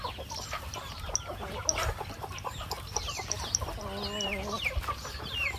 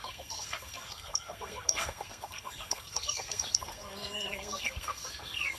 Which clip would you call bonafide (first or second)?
first